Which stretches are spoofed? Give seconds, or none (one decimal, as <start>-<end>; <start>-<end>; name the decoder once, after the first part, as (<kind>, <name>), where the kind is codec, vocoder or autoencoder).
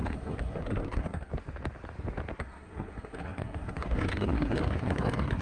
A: 0.0-1.3 (codec, SNAC); 2.4-5.4